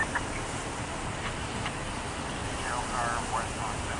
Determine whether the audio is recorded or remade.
recorded